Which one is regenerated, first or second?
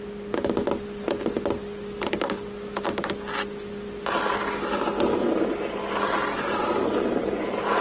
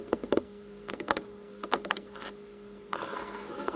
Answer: second